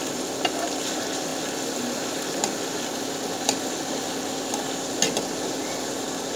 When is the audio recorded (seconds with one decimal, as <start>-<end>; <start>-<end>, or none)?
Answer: 0.0-6.4